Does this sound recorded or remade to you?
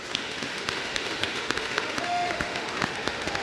remade